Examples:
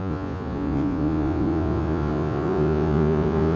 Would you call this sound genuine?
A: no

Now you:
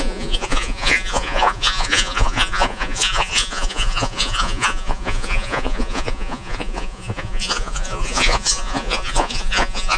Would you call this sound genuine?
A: no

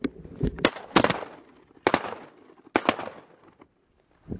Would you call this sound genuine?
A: yes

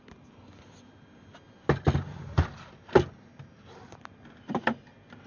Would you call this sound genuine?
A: yes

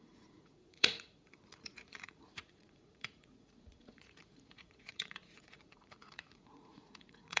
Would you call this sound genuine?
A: no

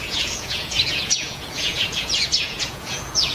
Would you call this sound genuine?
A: no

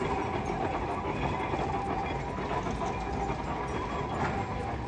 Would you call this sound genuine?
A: yes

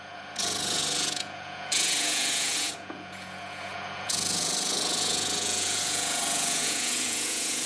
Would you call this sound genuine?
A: no